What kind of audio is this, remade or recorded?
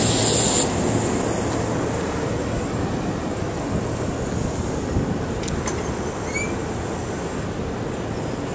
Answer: recorded